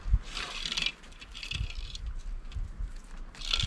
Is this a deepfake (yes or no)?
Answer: no